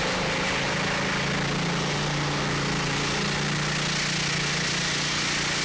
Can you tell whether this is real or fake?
real